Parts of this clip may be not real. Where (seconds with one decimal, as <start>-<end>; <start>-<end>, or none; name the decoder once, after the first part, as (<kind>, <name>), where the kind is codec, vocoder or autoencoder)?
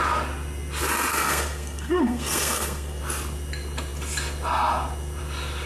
1.1-3.0 (codec, SNAC)